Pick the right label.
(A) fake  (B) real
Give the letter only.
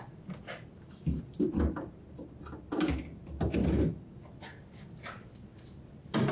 A